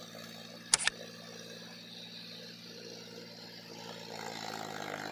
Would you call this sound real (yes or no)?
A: yes